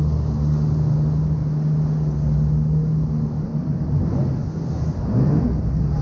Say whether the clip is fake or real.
real